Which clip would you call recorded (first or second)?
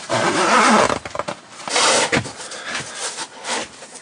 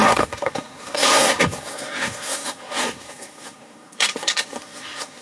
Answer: first